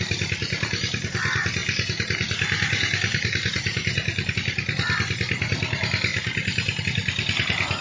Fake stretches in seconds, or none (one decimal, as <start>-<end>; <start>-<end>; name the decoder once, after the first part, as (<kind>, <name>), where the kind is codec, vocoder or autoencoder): 1.6-4.3 (vocoder, BigVGAN v2); 6.1-6.8